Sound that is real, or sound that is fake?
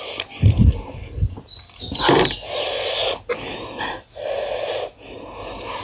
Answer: real